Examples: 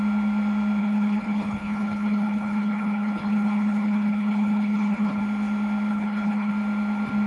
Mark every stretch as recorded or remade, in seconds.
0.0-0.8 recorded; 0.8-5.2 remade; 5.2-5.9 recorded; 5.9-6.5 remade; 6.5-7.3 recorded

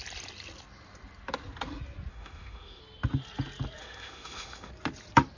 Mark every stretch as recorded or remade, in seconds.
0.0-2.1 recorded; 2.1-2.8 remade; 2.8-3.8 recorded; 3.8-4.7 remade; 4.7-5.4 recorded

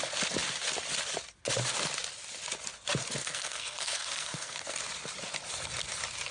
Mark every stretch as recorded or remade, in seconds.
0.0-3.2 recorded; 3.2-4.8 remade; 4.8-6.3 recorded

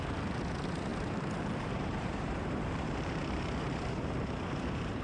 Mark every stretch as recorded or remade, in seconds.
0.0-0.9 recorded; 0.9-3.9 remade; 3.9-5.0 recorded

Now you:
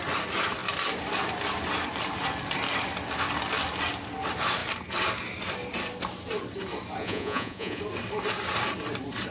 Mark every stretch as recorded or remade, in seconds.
0.0-7.0 recorded; 7.0-7.8 remade; 7.8-9.3 recorded

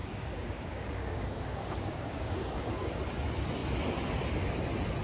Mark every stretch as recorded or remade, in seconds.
0.0-3.0 remade; 3.0-5.0 recorded